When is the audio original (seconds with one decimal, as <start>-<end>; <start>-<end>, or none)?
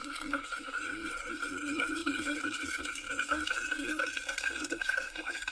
none